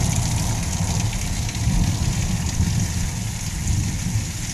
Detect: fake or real real